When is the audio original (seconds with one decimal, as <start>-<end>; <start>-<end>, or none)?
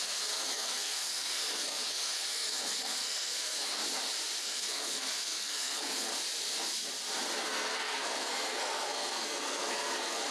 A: 3.8-4.4; 6.1-7.4